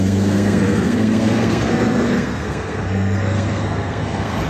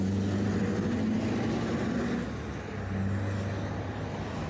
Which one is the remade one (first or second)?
first